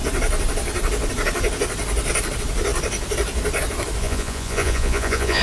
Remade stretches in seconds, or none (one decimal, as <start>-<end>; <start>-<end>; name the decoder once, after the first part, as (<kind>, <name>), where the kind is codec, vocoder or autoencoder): 4.0-5.4 (vocoder, Vocos)